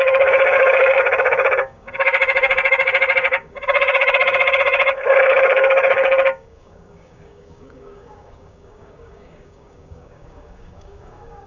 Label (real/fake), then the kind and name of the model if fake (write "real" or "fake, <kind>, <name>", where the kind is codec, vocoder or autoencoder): fake, codec, DAC